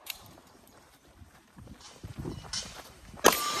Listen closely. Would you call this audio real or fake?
fake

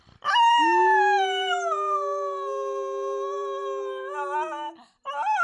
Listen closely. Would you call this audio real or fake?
real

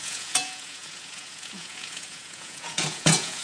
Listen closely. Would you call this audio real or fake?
fake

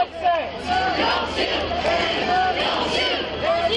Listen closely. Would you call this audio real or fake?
real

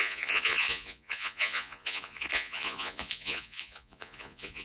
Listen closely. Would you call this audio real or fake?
fake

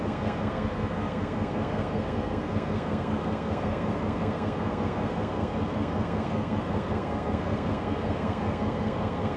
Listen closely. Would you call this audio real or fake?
fake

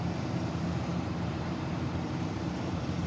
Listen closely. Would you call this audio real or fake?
fake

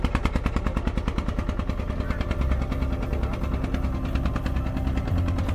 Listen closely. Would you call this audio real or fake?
real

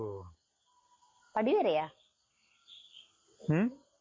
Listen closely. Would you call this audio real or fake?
real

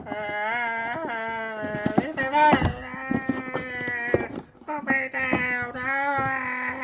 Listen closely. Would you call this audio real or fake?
real